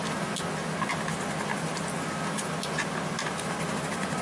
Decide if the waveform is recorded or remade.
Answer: recorded